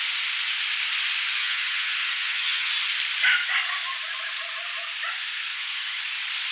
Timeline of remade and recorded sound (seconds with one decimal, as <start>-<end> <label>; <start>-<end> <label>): 0.0-1.4 recorded; 1.4-2.7 remade; 2.7-5.5 recorded; 5.5-6.0 remade; 6.0-6.5 recorded